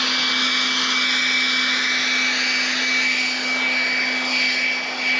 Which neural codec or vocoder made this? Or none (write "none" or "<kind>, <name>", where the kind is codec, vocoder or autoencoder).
none